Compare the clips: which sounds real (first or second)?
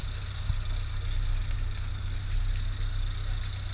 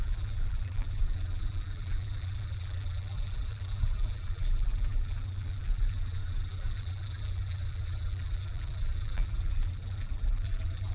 first